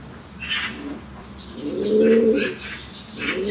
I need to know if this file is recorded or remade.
recorded